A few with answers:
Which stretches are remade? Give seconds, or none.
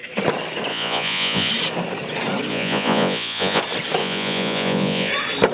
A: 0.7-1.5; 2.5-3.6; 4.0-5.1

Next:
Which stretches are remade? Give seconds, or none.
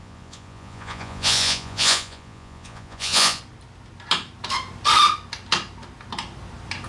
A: 0.0-3.4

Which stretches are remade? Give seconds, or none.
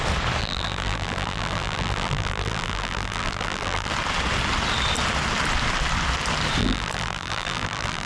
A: 0.4-3.9; 6.6-8.1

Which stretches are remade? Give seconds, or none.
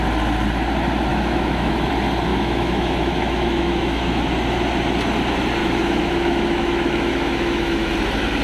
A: 1.1-1.9; 2.3-4.2; 5.6-7.9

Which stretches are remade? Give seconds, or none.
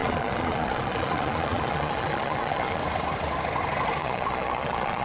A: 0.0-2.8; 4.0-5.0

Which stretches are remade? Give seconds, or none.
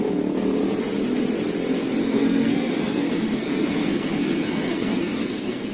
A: 2.0-5.7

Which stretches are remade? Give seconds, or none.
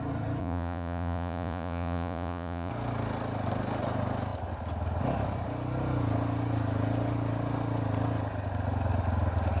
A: 0.4-2.7